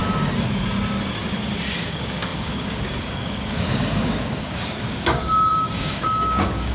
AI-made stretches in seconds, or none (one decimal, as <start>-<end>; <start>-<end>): 1.8-6.7